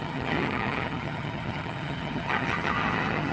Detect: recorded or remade remade